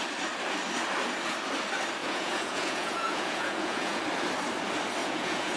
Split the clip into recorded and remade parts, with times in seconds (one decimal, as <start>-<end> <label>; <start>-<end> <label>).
0.0-2.0 recorded; 2.0-4.0 remade; 4.0-5.0 recorded; 5.0-5.6 remade